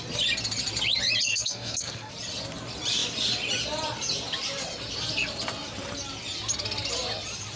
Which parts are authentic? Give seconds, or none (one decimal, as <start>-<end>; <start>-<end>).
0.0-1.3; 2.1-7.6